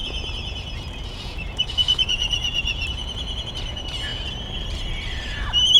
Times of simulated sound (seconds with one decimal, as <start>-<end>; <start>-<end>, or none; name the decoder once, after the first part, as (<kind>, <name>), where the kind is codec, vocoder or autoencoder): 0.0-3.5 (vocoder, Vocos)

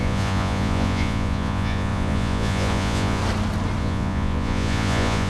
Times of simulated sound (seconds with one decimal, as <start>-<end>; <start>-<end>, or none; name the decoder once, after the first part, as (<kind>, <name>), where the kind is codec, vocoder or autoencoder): 0.0-3.2 (vocoder, Vocos); 3.8-5.3

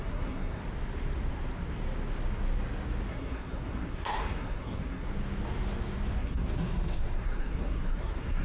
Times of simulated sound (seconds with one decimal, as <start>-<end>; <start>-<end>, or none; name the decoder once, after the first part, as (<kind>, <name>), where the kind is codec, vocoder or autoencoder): 0.0-0.6 (codec, SNAC); 3.1-5.1; 6.2-8.4

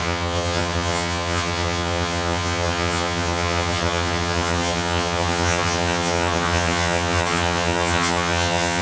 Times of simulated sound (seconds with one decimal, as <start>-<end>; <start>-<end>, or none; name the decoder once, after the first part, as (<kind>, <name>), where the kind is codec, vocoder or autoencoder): 0.0-8.8 (vocoder, HiFi-GAN)

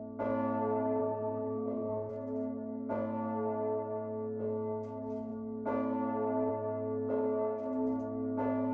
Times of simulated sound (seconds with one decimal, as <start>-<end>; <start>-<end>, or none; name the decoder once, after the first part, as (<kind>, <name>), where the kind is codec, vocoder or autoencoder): 1.0-2.1 (codec, SNAC)

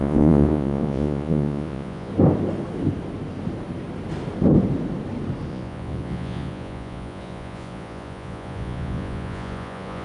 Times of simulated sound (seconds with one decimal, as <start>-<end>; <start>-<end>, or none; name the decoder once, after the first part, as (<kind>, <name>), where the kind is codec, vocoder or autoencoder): 0.0-2.1 (vocoder, Vocos); 5.5-10.0

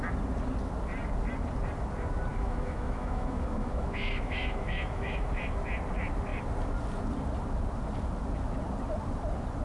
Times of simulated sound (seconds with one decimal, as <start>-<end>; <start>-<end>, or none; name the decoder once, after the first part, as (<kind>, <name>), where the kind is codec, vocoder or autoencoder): 2.3-5.3 (autoencoder, DAC-VAE)

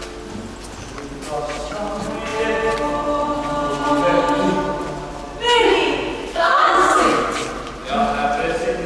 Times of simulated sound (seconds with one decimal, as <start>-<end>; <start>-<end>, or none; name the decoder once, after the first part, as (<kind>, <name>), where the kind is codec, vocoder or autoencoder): 6.3-7.0 (codec, SNAC)